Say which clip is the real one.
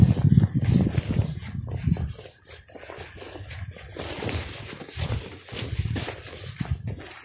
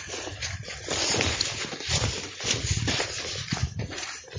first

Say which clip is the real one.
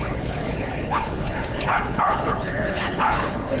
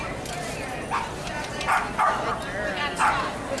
second